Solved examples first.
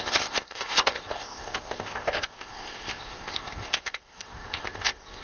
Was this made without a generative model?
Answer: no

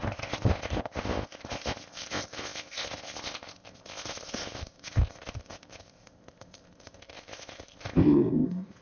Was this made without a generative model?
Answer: no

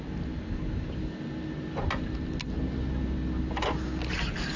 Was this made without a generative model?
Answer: yes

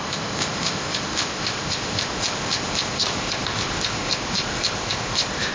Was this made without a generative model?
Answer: no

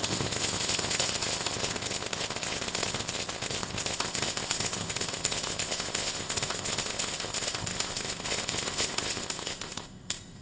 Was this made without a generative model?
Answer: no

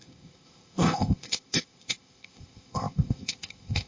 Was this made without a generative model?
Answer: no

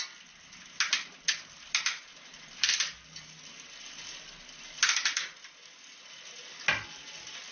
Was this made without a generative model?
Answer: yes